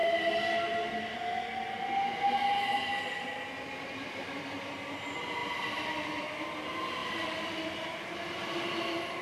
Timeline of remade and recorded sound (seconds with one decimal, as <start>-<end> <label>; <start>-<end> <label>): 0.0-5.4 recorded; 5.4-6.2 remade; 6.2-9.2 recorded